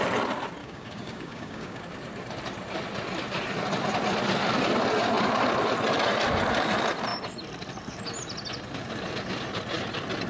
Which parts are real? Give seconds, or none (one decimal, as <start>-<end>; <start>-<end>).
0.0-0.6; 1.8-10.3